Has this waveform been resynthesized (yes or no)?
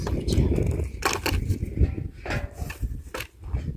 no